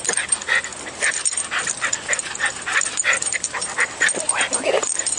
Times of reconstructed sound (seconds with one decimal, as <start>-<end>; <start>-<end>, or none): none